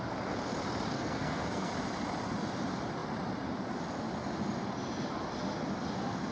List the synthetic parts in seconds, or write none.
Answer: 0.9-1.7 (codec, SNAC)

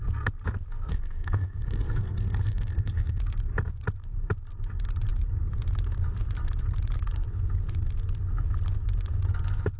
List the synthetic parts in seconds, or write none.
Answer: 0.9-3.2 (codec, SNAC)

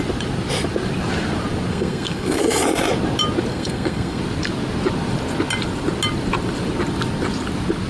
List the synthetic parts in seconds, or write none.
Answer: 1.7-2.4 (codec, SNAC); 3.5-4.2

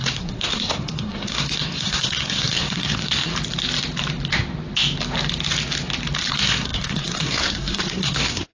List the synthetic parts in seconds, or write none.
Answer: 0.0-3.3 (codec, SNAC); 6.3-8.5

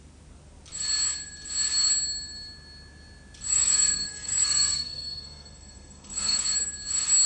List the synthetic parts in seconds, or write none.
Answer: 3.5-6.4 (codec, SNAC)

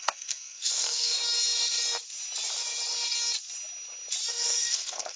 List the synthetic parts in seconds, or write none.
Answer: 0.0-1.2 (codec, SNAC); 4.3-5.2